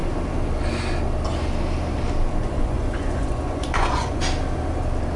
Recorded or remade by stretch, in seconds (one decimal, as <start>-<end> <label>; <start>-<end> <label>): 0.0-2.4 recorded; 2.4-4.2 remade; 4.2-5.2 recorded